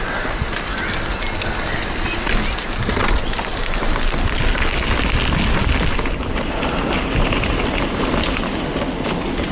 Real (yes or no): yes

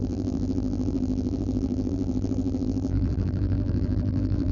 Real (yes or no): no